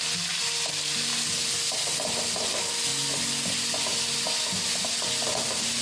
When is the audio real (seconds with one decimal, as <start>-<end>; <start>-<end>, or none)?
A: 0.0-5.8